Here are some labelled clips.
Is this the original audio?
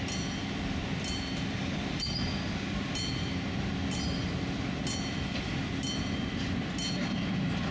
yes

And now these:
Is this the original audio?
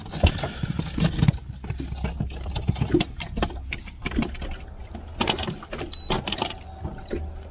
yes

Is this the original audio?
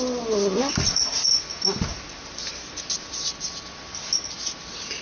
yes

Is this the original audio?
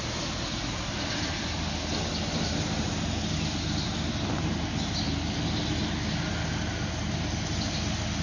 yes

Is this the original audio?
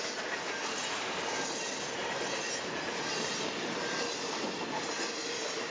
yes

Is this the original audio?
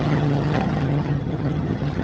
no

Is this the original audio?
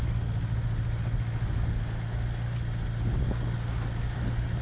yes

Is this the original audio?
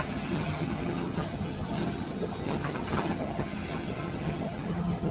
no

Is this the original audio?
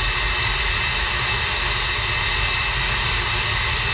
yes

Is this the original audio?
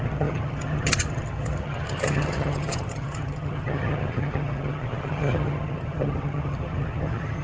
no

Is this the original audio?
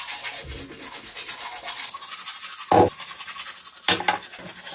yes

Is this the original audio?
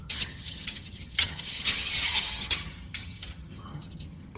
no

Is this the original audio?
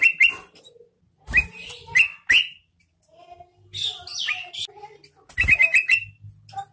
yes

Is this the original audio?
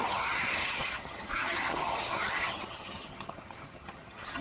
no